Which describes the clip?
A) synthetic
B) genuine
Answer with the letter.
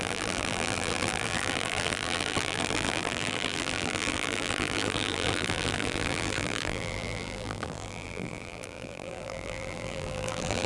A